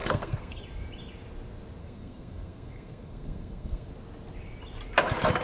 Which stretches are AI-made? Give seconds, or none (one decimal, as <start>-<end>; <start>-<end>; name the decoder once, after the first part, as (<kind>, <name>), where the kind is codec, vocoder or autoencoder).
0.0-0.6 (codec, SNAC); 1.8-3.9

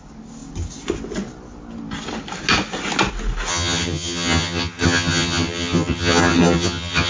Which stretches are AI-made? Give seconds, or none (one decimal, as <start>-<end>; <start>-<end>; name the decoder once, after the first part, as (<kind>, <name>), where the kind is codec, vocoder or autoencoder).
3.5-7.1 (vocoder, HiFi-GAN)

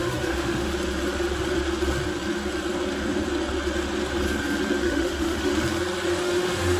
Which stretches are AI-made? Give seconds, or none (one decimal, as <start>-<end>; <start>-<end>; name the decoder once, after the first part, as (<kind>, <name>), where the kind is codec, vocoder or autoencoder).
0.0-0.7 (autoencoder, DAC-VAE); 4.8-5.5; 6.2-6.8

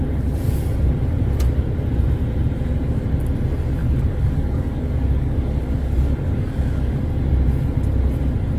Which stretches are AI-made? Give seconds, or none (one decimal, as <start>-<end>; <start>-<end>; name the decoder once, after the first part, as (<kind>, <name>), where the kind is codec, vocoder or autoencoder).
3.8-7.0 (codec, DAC)

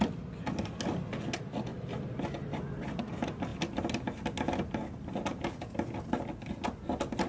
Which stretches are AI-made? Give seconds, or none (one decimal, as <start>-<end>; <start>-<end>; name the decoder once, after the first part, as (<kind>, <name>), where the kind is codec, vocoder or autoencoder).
none

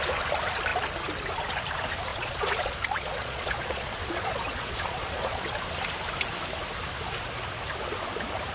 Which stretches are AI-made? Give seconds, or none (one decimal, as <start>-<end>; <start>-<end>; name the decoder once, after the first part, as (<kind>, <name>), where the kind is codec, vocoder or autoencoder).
2.1-5.6 (vocoder, Vocos)

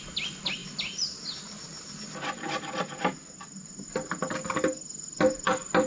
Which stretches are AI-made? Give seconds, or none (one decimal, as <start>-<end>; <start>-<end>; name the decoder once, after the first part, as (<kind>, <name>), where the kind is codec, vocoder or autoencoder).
none

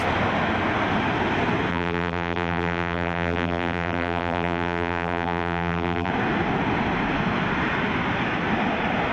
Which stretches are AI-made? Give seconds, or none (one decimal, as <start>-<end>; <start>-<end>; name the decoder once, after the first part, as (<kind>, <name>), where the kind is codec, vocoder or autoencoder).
1.7-6.1 (vocoder, BigVGAN v2)